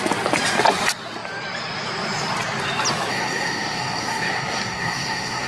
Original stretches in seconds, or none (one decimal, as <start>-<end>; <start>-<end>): 0.0-3.1